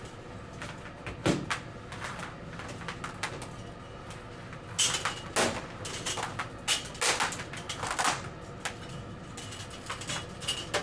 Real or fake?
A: real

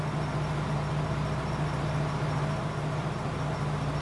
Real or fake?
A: real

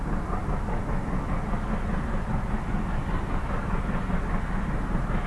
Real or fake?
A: real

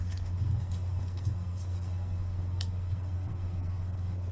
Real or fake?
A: fake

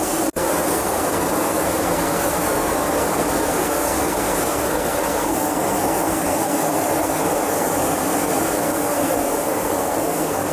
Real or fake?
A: fake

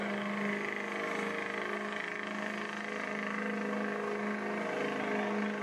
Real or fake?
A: real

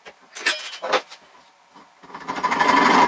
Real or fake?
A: real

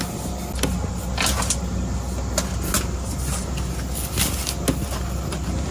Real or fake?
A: real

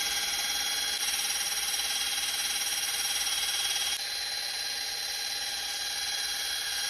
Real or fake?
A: real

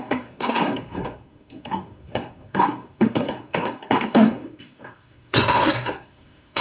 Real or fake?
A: fake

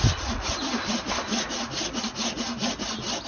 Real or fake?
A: real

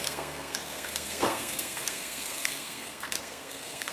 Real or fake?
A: fake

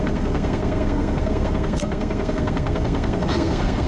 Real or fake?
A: fake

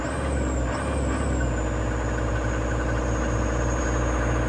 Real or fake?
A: real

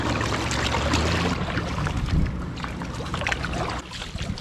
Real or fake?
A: real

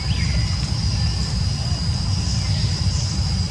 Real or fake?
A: real